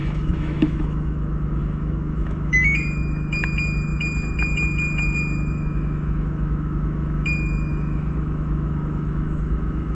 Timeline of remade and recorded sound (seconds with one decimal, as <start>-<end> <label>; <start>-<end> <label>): 0.0-9.9 remade